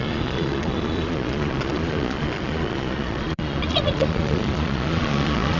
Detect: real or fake fake